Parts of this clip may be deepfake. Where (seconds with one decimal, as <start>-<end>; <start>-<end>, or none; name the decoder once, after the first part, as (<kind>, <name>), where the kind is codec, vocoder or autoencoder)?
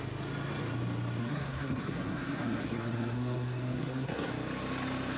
1.2-4.3 (codec, SNAC)